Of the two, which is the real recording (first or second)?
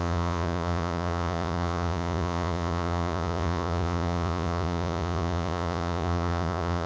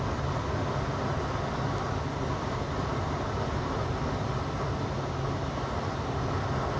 second